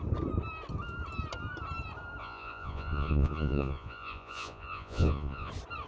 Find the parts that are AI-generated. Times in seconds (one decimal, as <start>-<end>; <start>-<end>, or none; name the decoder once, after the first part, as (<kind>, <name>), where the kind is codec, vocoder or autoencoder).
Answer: 2.2-5.5 (vocoder, Vocos)